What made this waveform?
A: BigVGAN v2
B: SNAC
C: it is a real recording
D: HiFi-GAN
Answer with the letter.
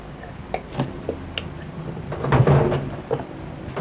C